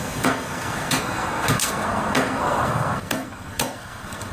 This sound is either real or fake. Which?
fake